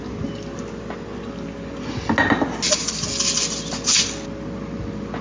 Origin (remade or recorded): recorded